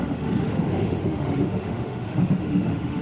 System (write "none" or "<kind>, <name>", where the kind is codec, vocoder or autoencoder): autoencoder, DAC-VAE